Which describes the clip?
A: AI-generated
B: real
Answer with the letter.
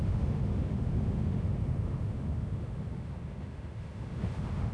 A